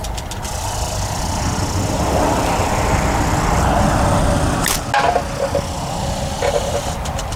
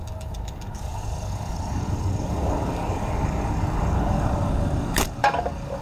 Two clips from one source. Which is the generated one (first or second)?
second